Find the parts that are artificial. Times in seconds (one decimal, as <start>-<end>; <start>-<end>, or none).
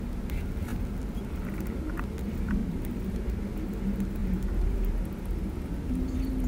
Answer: 2.6-3.4; 4.2-5.0